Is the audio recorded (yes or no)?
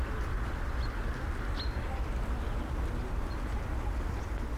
yes